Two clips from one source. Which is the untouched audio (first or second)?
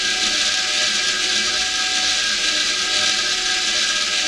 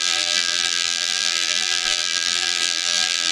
first